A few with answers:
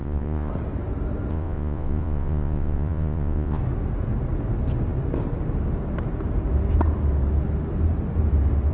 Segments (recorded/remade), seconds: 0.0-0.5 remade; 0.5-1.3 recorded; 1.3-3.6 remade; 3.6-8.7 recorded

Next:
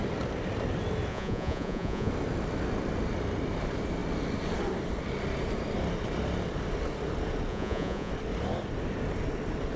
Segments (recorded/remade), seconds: 0.0-1.1 recorded; 1.1-2.1 remade; 2.1-7.5 recorded; 7.5-8.1 remade; 8.1-9.8 recorded

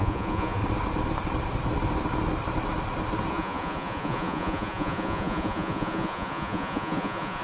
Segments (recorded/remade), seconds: 0.0-0.6 remade; 0.6-3.3 recorded; 3.3-7.4 remade

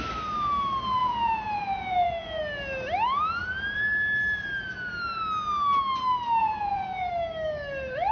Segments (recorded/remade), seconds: 0.0-1.0 recorded; 1.0-2.4 remade; 2.4-6.4 recorded; 6.4-7.1 remade; 7.1-8.1 recorded

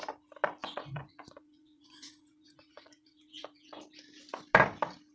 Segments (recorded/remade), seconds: 0.0-0.6 recorded; 0.6-3.7 remade; 3.7-5.1 recorded